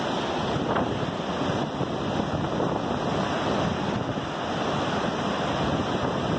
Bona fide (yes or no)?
yes